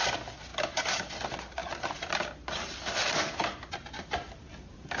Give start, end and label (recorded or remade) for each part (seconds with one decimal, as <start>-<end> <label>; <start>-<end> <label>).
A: 0.0-5.0 recorded

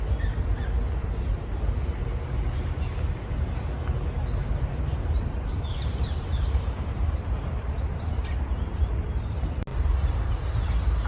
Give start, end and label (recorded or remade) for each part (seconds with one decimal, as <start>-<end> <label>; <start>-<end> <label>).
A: 0.0-1.0 recorded; 1.0-1.6 remade; 1.6-4.4 recorded; 4.4-8.9 remade; 8.9-11.1 recorded